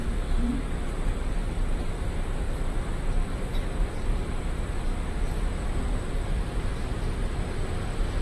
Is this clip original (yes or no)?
no